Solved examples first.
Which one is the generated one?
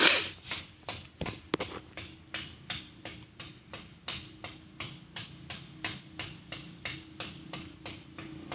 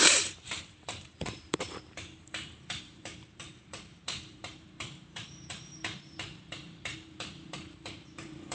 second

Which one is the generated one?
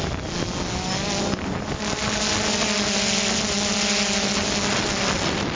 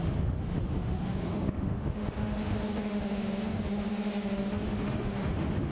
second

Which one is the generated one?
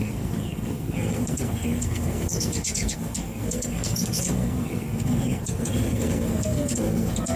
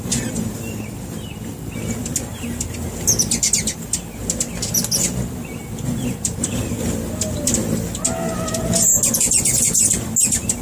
first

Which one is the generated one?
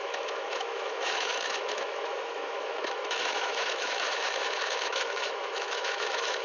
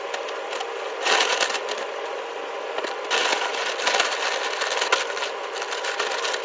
first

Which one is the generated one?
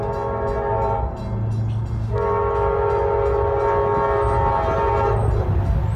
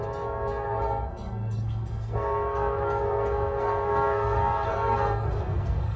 second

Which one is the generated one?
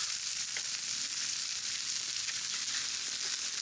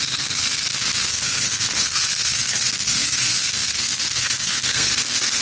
second